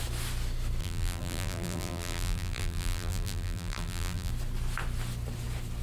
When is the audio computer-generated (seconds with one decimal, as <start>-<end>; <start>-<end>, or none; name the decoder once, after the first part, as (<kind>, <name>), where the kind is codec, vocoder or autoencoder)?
0.8-4.3 (vocoder, BigVGAN v2)